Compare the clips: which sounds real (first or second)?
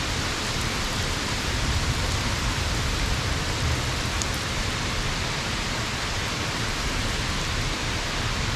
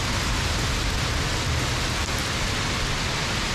second